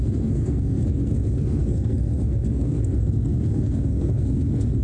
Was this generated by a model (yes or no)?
yes